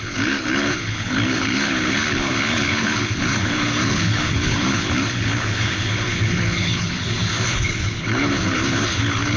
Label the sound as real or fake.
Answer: fake